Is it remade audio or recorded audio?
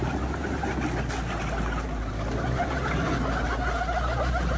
recorded